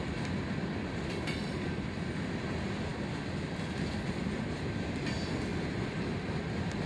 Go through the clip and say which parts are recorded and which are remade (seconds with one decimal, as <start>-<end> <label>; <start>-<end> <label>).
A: 0.0-2.2 remade; 2.2-2.9 recorded; 2.9-3.9 remade; 3.9-6.9 recorded